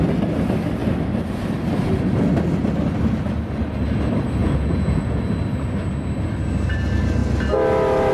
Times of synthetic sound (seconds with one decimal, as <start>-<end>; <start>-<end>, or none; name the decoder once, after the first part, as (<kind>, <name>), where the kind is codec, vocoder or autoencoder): 4.4-5.2 (vocoder, Vocos)